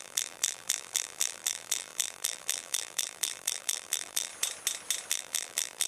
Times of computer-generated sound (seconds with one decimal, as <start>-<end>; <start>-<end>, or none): 0.0-4.3; 5.1-5.9